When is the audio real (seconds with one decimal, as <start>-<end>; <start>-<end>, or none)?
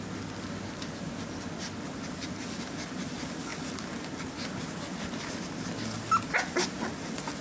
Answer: 0.0-7.4